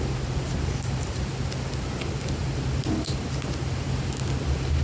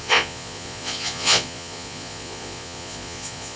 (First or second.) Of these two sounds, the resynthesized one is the second